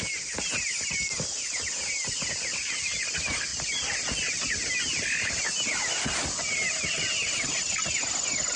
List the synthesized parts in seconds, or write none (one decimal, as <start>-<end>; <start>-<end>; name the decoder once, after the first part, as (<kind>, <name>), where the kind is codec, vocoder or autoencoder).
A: none